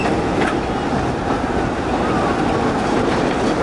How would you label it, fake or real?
real